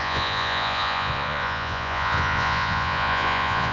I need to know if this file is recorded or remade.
remade